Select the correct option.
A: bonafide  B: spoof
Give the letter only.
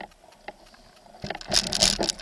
A